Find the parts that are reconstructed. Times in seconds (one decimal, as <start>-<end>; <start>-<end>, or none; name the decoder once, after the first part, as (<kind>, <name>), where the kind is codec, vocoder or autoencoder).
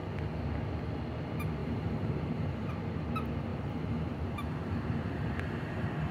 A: 1.6-2.7 (vocoder, BigVGAN v2); 3.5-6.1